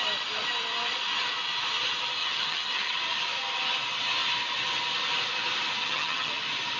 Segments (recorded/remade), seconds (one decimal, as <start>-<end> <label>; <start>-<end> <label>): 0.0-2.2 recorded; 2.2-3.0 remade; 3.0-5.8 recorded; 5.8-6.3 remade; 6.3-6.8 recorded